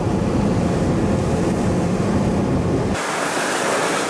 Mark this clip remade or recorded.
recorded